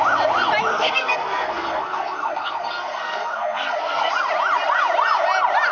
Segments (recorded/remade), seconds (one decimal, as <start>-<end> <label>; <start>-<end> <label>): 0.0-0.7 recorded; 0.7-4.1 remade; 4.1-5.7 recorded